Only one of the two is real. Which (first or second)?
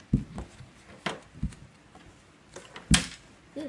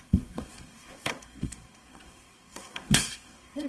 first